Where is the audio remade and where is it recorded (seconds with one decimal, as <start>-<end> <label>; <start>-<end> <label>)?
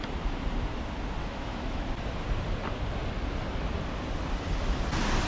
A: 0.0-1.2 recorded; 1.2-1.8 remade; 1.8-5.3 recorded